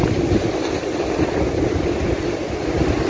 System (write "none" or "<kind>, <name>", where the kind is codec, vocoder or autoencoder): none